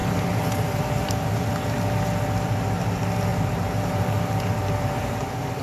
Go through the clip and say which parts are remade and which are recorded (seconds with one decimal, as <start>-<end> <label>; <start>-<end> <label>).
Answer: 0.0-1.1 remade; 1.1-3.3 recorded; 3.3-5.6 remade